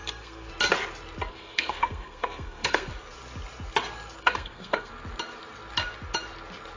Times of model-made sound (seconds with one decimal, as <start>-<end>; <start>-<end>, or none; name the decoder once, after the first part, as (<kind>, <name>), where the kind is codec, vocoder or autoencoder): 0.0-0.5 (codec, SNAC); 1.3-2.9; 4.2-4.9